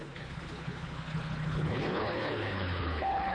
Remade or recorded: remade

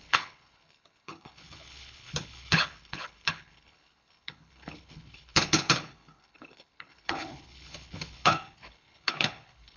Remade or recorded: remade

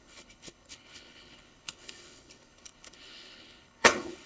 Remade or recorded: remade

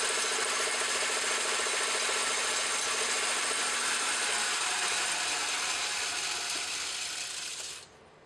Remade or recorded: recorded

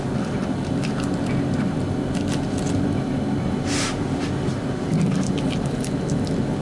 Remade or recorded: recorded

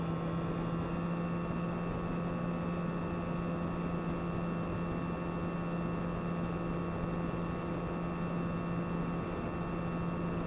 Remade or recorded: recorded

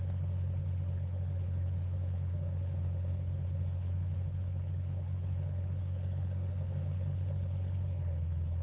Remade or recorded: remade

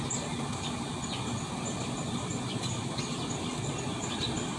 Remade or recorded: recorded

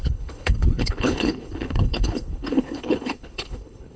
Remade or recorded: remade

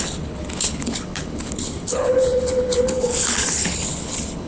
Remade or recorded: remade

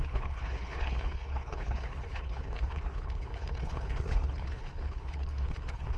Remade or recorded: remade